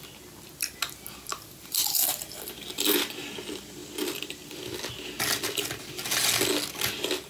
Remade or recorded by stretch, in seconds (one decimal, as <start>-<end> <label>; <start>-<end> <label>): 0.0-1.3 recorded; 1.3-3.1 remade; 3.1-7.3 recorded